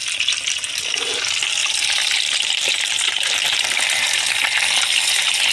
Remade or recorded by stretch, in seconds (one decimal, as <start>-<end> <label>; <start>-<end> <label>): 0.0-1.6 recorded; 1.6-4.3 remade; 4.3-5.5 recorded